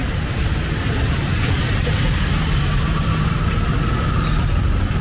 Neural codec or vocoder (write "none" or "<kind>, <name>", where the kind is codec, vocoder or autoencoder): vocoder, BigVGAN v2